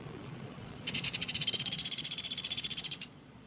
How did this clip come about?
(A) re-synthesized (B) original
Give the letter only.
A